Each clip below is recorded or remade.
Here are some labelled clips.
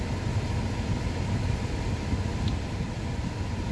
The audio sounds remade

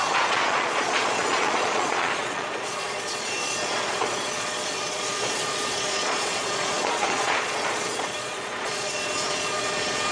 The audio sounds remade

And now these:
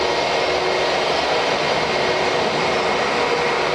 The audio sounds recorded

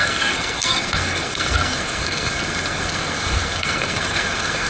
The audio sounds remade